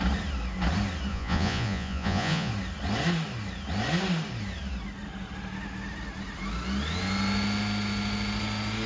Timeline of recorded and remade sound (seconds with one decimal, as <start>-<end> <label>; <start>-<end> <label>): 0.0-1.1 recorded; 1.1-2.5 remade; 2.5-8.9 recorded